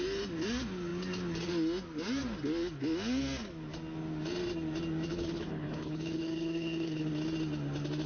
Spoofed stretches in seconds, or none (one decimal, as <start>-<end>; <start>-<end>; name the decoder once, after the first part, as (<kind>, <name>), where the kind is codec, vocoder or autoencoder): 5.1-7.1 (codec, HILCodec)

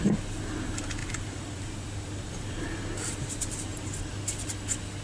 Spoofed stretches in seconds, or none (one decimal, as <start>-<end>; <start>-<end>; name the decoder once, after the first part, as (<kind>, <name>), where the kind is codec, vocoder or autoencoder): 1.0-4.0 (vocoder, BigVGAN v2)

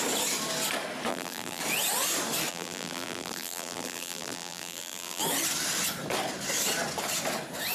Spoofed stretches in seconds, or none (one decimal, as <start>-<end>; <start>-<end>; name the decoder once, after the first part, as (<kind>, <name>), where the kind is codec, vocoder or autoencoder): 1.1-1.6 (vocoder, BigVGAN v2); 2.5-5.2

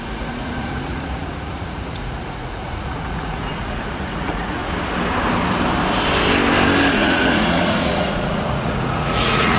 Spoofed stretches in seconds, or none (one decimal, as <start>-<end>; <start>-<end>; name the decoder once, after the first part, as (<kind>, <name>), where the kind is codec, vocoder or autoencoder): 0.0-4.6 (vocoder, Vocos); 6.9-9.6

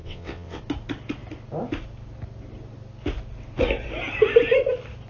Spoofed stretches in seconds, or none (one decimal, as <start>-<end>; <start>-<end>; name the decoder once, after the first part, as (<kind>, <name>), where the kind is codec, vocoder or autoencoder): 0.0-0.6 (vocoder, WaveNeXt)

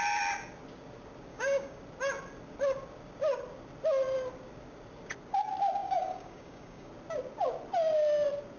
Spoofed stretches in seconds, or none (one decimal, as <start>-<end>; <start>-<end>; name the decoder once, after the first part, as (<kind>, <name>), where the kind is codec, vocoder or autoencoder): 1.3-1.8 (codec, DAC); 5.8-6.9

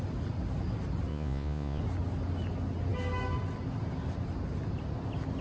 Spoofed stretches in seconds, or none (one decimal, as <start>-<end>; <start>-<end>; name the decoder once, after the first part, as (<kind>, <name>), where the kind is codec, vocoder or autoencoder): 1.1-1.8 (vocoder, Vocos)